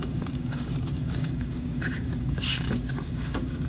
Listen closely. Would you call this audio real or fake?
fake